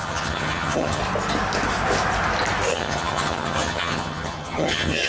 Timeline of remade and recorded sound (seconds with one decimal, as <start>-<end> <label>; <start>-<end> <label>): 0.0-1.0 remade; 1.0-2.7 recorded; 2.7-5.1 remade